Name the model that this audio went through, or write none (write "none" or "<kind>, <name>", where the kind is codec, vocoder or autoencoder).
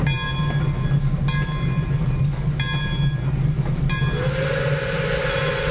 none